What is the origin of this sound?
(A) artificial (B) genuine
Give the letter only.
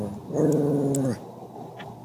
B